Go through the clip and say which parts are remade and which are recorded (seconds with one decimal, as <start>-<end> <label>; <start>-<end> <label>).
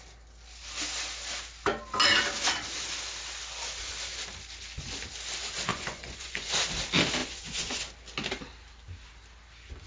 0.0-5.7 recorded; 5.7-6.5 remade; 6.5-7.2 recorded; 7.2-7.8 remade; 7.8-9.9 recorded